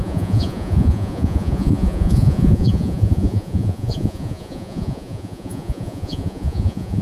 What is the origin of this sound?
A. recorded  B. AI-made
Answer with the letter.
B